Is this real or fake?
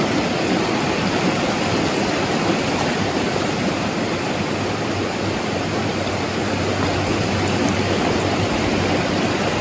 real